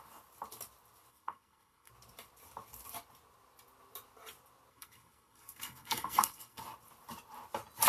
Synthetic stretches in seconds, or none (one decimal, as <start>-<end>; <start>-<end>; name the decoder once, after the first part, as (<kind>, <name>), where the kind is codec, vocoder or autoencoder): 1.1-1.9 (codec, SNAC); 4.7-6.6

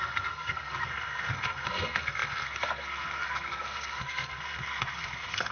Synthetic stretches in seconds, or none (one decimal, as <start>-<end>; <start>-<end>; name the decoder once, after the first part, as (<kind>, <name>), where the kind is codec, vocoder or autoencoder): 0.0-5.5 (codec, SNAC)

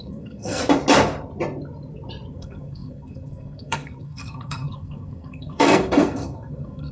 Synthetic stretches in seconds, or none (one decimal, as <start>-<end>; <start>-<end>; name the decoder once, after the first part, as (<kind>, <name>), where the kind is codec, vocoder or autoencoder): 0.0-0.6 (codec, SNAC); 2.3-6.9

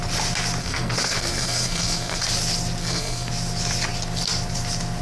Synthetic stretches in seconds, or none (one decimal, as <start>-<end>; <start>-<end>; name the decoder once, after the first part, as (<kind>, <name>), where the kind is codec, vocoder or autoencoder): 0.6-2.2 (codec, SNAC); 2.8-3.3

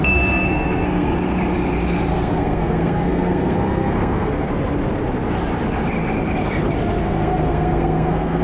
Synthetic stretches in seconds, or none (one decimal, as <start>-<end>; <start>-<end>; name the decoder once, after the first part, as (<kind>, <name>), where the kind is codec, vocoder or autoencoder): 0.0-1.1 (codec, SNAC); 2.1-4.5; 7.0-8.4

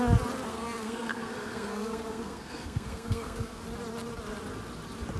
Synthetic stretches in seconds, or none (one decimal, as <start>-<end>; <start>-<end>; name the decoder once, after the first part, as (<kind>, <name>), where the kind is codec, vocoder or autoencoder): 0.5-3.6 (codec, SNAC)

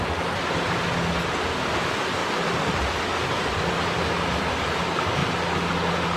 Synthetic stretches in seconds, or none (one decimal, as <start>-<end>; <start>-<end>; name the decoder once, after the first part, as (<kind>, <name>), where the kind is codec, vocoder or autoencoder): none

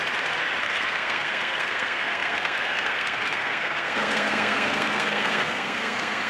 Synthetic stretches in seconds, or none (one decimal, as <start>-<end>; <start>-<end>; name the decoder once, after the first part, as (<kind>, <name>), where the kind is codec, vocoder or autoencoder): 0.6-6.3 (codec, SNAC)